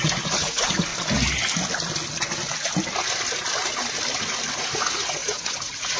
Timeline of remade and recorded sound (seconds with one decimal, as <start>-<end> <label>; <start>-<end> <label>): 0.0-0.9 remade; 0.9-4.5 recorded; 4.5-6.0 remade